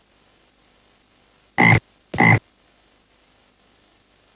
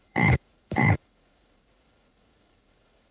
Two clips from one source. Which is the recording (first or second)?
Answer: first